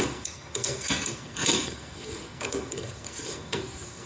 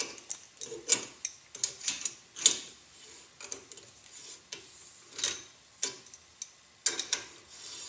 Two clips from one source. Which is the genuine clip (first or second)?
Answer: second